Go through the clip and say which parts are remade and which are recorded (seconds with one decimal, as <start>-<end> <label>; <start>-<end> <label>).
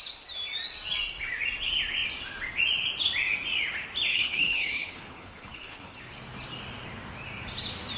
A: 0.0-4.1 recorded; 4.1-6.0 remade; 6.0-8.0 recorded